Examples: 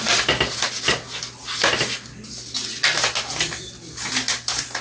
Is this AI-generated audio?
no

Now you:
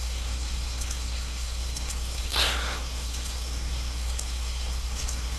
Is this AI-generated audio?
yes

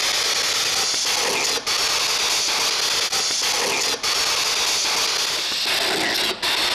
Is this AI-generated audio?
no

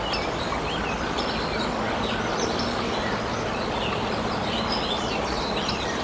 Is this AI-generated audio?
no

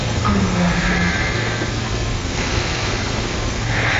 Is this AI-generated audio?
yes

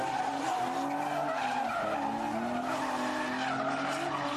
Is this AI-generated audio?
no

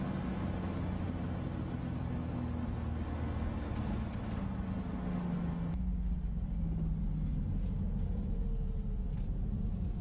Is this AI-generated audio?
no